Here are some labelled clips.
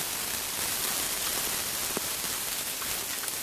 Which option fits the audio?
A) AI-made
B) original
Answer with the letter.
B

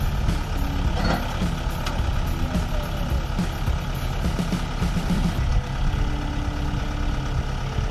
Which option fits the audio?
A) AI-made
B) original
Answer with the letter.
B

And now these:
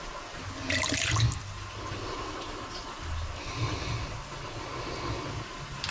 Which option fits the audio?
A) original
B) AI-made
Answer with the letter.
A